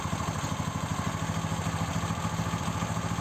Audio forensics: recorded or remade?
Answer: recorded